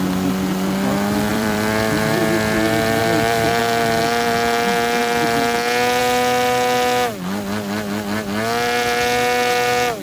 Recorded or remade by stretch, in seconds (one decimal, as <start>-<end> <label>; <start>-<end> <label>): 0.0-1.3 recorded; 1.3-2.2 remade; 2.2-3.0 recorded; 3.0-3.6 remade; 3.6-10.0 recorded